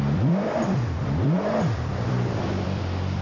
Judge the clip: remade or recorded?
remade